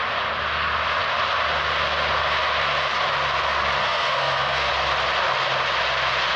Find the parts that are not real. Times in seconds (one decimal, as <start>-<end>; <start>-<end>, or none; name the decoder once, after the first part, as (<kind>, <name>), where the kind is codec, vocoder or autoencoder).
3.8-4.7 (codec, SNAC)